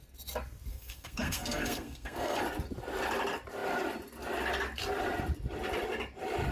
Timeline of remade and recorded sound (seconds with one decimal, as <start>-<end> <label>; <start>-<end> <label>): 0.0-0.7 recorded; 0.7-2.4 remade; 2.4-6.5 recorded